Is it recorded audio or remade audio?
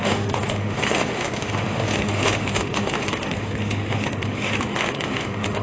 remade